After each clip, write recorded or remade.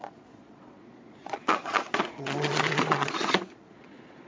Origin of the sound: remade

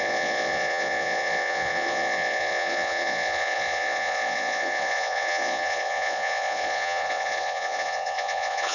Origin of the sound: remade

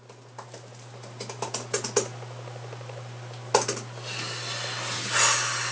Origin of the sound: recorded